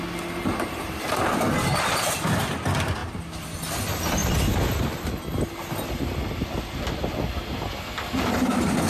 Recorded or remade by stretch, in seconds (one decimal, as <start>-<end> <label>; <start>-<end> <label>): 0.0-0.4 recorded; 0.4-1.3 remade; 1.3-8.9 recorded